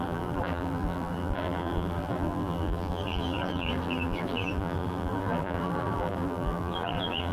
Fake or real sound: fake